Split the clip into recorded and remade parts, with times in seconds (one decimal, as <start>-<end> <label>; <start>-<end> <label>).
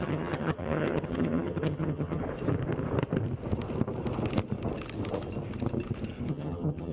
0.0-2.2 remade; 2.2-6.3 recorded; 6.3-6.9 remade